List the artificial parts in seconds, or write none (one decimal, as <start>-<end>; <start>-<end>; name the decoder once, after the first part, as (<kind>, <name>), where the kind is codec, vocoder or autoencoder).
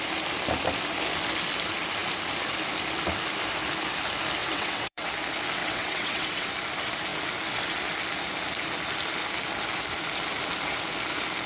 4.4-5.1 (vocoder, WaveNeXt); 5.6-6.5